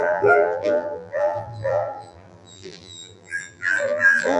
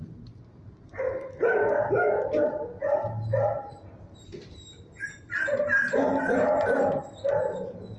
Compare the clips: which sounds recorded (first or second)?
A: second